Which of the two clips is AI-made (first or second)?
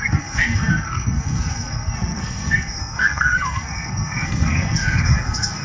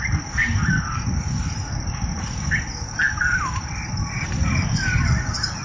first